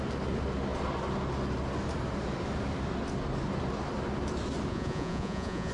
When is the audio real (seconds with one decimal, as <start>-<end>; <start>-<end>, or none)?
0.0-4.7